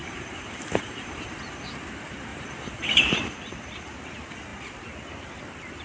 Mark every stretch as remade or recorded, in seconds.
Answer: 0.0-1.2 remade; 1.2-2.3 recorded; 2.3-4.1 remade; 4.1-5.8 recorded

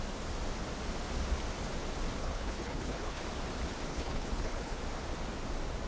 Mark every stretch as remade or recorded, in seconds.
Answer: 0.0-2.2 recorded; 2.2-3.2 remade; 3.2-3.9 recorded; 3.9-4.8 remade; 4.8-5.9 recorded

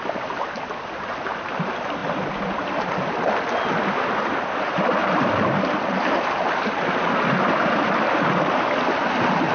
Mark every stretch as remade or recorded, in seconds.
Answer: 0.0-9.5 recorded

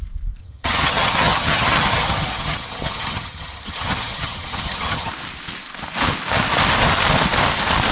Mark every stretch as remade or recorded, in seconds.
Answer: 0.0-0.4 recorded; 0.4-5.1 remade; 5.1-7.9 recorded

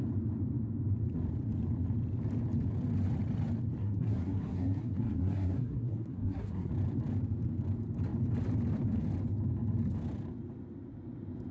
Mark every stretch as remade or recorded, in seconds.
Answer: 0.0-3.8 recorded; 3.8-6.7 remade; 6.7-11.5 recorded